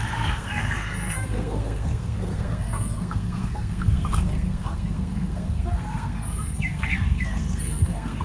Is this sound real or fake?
fake